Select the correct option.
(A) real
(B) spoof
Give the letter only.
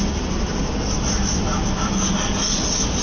A